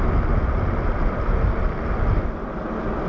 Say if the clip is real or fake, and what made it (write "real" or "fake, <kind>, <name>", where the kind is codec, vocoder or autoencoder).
real